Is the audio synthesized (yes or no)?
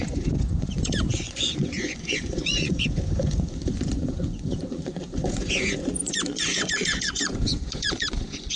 yes